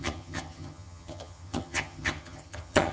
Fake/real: fake